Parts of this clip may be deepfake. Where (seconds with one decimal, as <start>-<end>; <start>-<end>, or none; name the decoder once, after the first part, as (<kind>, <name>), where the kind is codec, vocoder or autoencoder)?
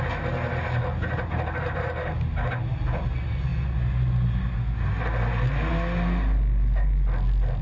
none